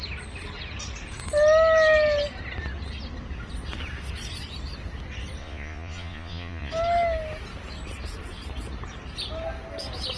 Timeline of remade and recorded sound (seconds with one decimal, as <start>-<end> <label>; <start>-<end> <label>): 0.0-5.4 recorded; 5.4-6.7 remade; 6.7-10.2 recorded